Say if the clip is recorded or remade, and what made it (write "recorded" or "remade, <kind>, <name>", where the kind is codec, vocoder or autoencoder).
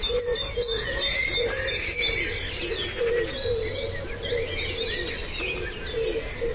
recorded